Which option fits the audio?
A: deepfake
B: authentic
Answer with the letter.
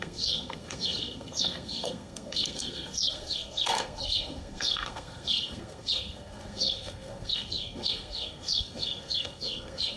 A